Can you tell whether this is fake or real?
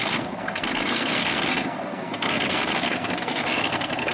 fake